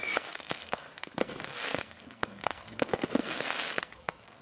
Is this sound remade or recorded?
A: remade